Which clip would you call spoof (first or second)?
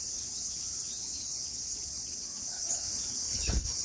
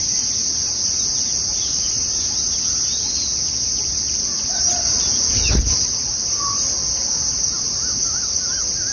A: first